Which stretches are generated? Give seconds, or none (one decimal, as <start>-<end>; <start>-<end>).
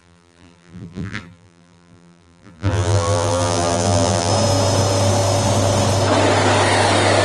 0.0-4.3